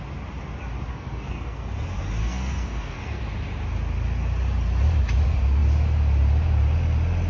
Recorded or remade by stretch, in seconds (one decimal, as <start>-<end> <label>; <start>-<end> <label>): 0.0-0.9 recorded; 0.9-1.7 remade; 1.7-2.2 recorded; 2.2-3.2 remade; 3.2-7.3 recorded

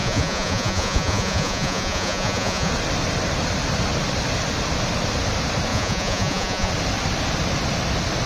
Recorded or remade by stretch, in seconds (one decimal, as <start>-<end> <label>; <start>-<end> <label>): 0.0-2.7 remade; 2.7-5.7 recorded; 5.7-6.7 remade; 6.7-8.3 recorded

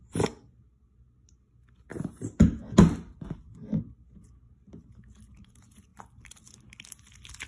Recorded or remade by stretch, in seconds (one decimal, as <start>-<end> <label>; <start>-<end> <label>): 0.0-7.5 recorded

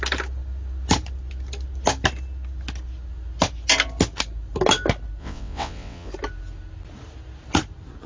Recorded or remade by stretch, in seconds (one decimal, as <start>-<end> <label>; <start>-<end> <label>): 0.0-5.2 recorded; 5.2-6.1 remade; 6.1-8.1 recorded

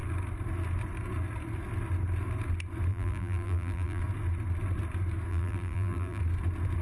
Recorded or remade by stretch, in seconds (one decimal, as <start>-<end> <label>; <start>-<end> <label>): 0.0-2.9 recorded; 2.9-4.0 remade; 4.0-5.3 recorded; 5.3-6.2 remade; 6.2-6.8 recorded

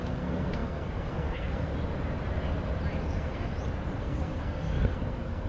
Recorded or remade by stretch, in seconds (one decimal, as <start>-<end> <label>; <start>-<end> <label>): 0.0-1.7 remade; 1.7-3.0 recorded; 3.0-3.5 remade; 3.5-4.0 recorded; 4.0-5.5 remade

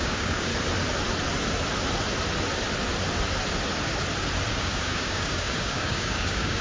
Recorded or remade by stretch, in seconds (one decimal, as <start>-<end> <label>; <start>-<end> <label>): 0.0-0.5 remade; 0.5-4.5 recorded; 4.5-6.6 remade